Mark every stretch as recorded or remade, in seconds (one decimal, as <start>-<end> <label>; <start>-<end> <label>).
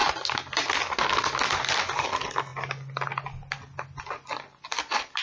0.0-5.2 recorded